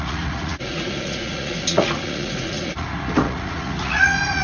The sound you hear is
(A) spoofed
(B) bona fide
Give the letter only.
A